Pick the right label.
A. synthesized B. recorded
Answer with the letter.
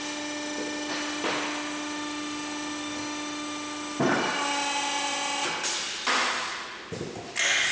B